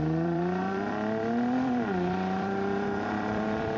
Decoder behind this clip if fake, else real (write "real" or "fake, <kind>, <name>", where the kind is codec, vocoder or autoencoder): fake, vocoder, BigVGAN v2